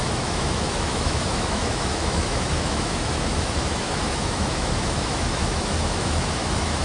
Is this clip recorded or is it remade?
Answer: remade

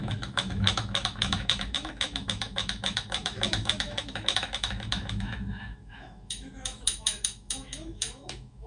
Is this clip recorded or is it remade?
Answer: remade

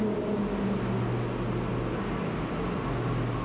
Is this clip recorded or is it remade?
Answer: recorded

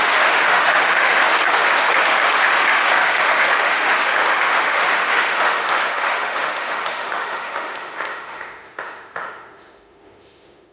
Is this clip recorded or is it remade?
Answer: remade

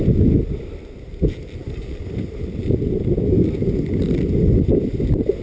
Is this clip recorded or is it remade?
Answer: recorded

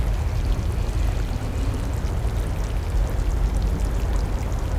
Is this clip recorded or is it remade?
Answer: recorded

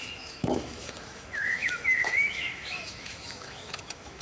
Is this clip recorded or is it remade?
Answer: remade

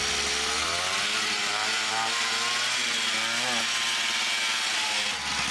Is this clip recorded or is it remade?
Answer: recorded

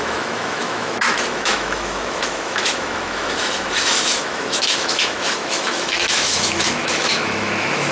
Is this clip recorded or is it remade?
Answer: remade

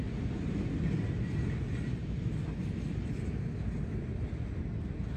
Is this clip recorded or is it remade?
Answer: recorded